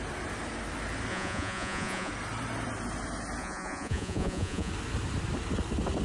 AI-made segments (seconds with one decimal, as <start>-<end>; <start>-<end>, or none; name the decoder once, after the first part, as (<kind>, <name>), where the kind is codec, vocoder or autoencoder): 1.1-2.1 (vocoder, Vocos); 3.4-4.7